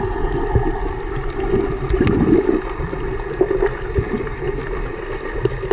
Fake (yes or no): no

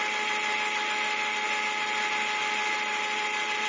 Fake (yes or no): no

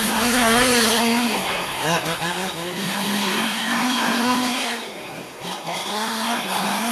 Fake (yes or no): yes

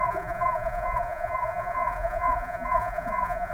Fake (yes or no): yes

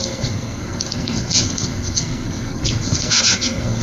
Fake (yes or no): yes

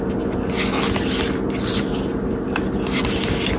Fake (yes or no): no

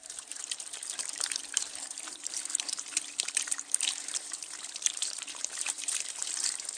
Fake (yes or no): yes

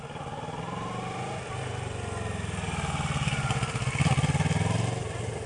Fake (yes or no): no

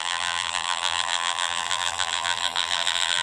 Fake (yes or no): yes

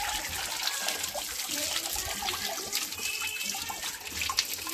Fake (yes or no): no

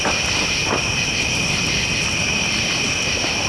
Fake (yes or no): no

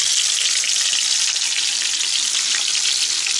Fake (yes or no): no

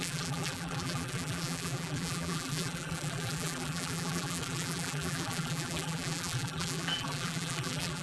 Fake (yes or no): yes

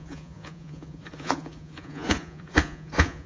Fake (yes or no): yes